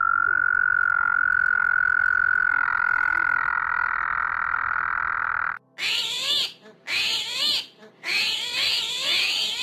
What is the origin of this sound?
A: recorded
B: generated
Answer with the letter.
A